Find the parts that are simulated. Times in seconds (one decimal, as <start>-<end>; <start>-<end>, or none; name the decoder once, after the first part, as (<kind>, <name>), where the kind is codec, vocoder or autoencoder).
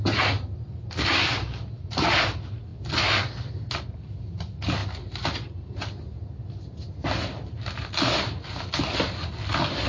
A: 1.2-2.2 (vocoder, BigVGAN v2)